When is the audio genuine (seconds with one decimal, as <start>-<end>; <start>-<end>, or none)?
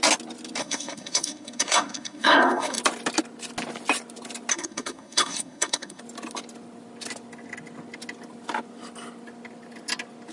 0.0-0.6; 2.8-4.5; 6.0-10.3